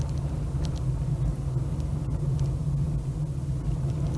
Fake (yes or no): no